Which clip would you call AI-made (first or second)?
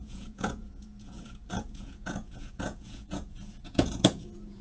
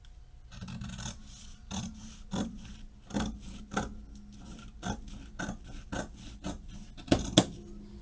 first